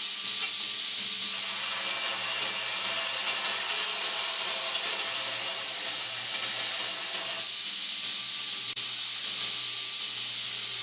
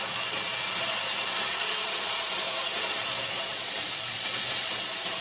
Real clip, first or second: first